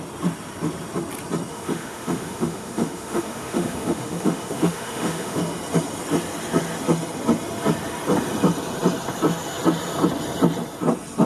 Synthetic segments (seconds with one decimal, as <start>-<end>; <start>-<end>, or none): 1.5-5.4